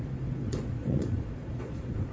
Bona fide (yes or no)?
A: no